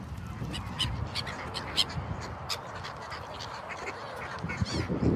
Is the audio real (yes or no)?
yes